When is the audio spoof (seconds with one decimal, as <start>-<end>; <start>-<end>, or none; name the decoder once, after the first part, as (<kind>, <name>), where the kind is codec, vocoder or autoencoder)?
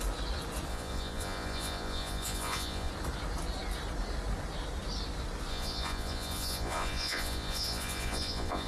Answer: 0.7-2.9 (vocoder, Vocos); 5.5-8.7